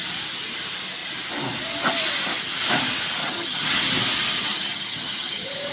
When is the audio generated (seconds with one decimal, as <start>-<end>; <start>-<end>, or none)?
3.2-3.8; 4.4-5.7